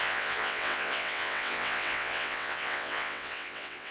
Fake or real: fake